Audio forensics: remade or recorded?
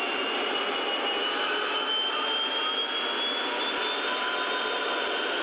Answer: recorded